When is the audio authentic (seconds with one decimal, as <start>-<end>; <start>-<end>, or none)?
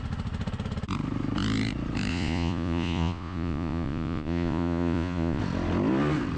0.0-2.1; 5.4-6.4